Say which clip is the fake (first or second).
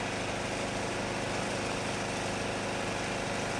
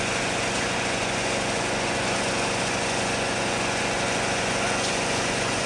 second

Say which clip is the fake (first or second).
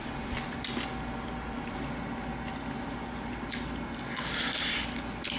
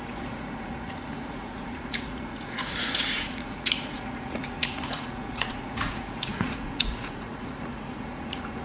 second